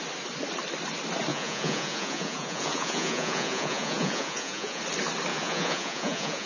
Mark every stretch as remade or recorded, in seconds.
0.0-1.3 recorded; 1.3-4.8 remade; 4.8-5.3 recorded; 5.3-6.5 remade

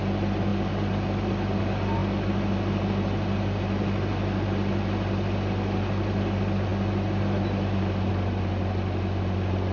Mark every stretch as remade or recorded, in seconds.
0.0-9.7 recorded

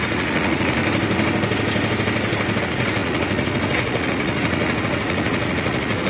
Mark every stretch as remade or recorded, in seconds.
0.0-0.8 remade; 0.8-2.6 recorded; 2.6-6.1 remade